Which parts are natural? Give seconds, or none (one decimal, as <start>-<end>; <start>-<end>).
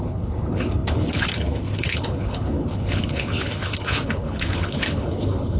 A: none